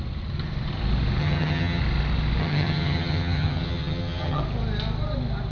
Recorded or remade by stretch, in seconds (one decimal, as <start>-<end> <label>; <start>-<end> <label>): 0.0-1.2 recorded; 1.2-1.8 remade; 1.8-2.4 recorded; 2.4-4.4 remade; 4.4-5.5 recorded